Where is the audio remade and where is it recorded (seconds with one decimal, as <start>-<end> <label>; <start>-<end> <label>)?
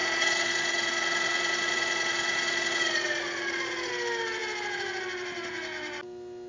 0.0-3.9 remade; 3.9-6.5 recorded